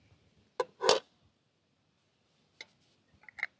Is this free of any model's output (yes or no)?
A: yes